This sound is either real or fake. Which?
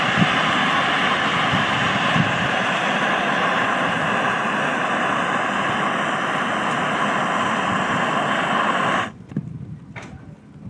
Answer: real